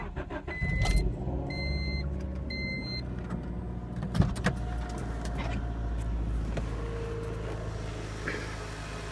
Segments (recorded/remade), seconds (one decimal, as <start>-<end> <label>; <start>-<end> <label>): 0.0-9.1 recorded